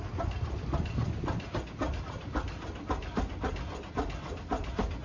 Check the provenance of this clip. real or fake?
real